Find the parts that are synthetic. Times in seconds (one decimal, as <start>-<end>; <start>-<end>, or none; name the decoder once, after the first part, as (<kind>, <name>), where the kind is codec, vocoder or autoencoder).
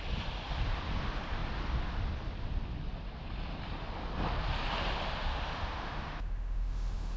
5.3-7.2 (autoencoder, DAC-VAE)